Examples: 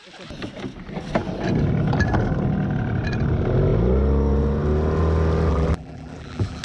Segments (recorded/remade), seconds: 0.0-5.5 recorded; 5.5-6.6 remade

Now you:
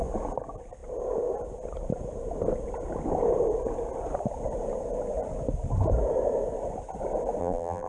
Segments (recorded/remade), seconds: 0.0-7.4 recorded; 7.4-7.9 remade

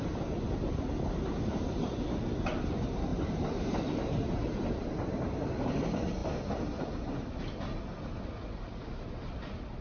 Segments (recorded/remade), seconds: 0.0-3.1 recorded; 3.1-5.5 remade; 5.5-9.8 recorded

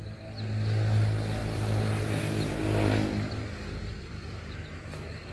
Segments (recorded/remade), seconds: 0.0-1.4 recorded; 1.4-2.1 remade; 2.1-3.9 recorded; 3.9-4.8 remade; 4.8-5.3 recorded

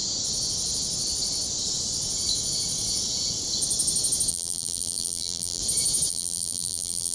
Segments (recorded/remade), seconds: 0.0-4.3 recorded; 4.3-5.6 remade; 5.6-6.1 recorded; 6.1-7.1 remade